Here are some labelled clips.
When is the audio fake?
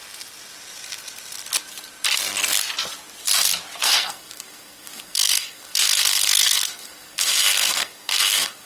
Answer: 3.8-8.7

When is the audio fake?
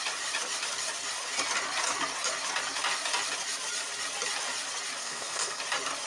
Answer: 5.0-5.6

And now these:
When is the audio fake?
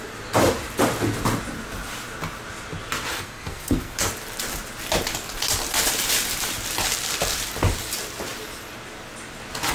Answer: 3.1-4.0